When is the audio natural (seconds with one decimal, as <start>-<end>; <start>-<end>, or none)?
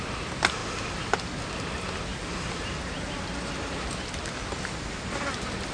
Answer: 0.0-5.7